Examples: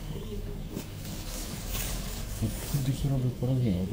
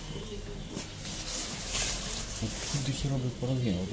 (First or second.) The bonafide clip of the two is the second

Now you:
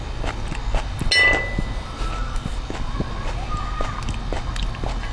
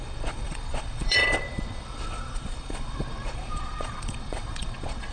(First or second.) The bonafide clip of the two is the first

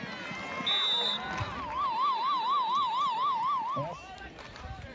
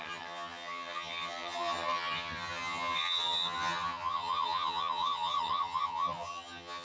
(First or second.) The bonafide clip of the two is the first